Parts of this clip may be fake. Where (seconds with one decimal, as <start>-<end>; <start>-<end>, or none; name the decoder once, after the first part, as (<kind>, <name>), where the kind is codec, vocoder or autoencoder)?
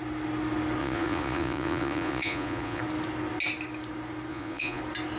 0.8-2.8 (vocoder, Vocos); 4.3-4.8